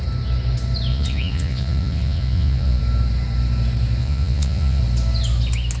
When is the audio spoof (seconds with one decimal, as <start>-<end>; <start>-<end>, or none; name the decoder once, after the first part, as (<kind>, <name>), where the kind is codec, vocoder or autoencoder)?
0.9-2.8 (vocoder, Vocos); 4.0-4.8